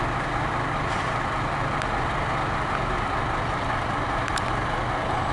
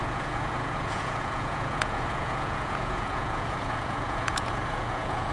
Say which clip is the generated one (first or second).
second